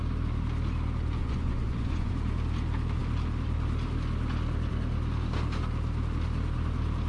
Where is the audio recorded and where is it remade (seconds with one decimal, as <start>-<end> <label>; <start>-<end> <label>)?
0.0-1.2 recorded; 1.2-2.1 remade; 2.1-7.1 recorded